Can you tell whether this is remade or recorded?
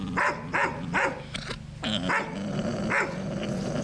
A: recorded